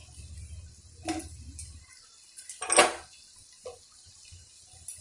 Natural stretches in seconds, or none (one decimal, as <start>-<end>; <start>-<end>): 0.0-5.0